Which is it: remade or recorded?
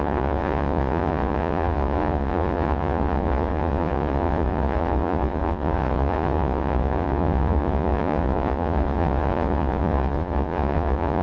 remade